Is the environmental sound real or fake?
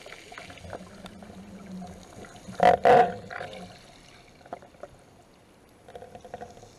real